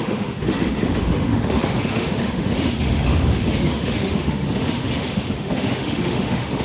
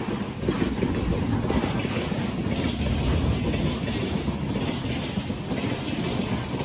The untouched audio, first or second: second